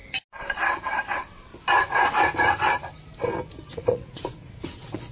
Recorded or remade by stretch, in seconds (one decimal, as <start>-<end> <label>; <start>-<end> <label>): 0.0-1.1 recorded; 1.1-1.5 remade; 1.5-3.7 recorded; 3.7-5.1 remade